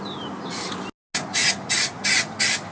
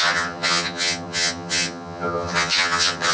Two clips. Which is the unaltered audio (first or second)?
first